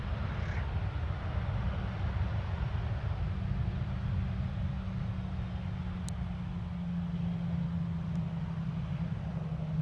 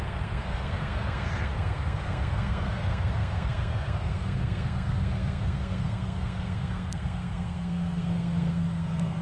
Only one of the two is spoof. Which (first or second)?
second